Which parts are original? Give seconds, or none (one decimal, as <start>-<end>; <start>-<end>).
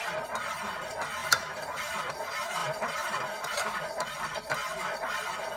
0.0-1.2; 2.1-2.6; 4.2-5.6